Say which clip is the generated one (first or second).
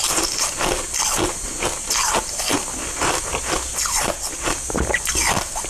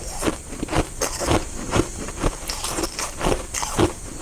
second